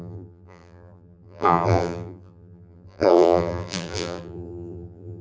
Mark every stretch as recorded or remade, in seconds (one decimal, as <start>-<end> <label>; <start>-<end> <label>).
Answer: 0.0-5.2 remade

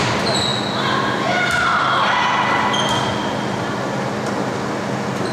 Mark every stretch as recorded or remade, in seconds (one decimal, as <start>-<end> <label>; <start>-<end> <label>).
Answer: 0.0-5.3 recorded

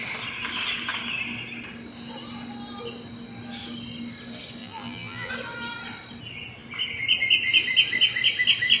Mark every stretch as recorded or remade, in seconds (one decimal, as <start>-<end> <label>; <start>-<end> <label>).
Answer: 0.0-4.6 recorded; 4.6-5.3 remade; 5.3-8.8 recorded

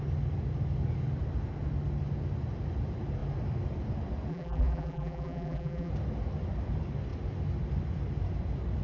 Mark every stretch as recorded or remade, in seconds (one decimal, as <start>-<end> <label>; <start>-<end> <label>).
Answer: 0.0-4.3 recorded; 4.3-5.9 remade; 5.9-8.8 recorded